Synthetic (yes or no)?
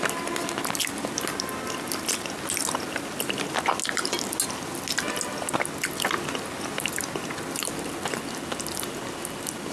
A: no